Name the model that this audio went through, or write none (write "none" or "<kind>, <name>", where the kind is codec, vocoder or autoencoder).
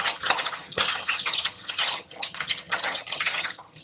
vocoder, HiFi-GAN